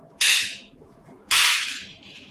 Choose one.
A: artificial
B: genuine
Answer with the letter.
A